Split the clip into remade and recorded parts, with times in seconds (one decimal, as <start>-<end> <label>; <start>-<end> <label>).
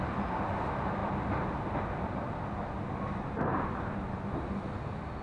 0.0-5.2 recorded